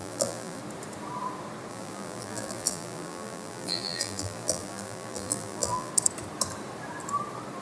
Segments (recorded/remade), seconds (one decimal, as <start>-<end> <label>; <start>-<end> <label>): 0.0-0.6 remade; 0.6-1.7 recorded; 1.7-5.9 remade; 5.9-7.6 recorded